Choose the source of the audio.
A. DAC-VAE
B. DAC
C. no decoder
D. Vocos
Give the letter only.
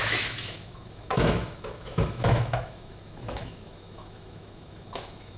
A